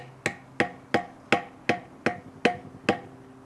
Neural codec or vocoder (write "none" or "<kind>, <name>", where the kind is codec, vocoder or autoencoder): none